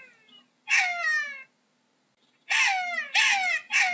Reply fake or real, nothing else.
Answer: real